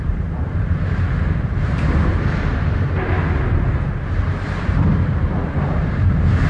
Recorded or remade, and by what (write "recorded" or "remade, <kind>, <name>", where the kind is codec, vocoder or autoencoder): remade, vocoder, BigVGAN v2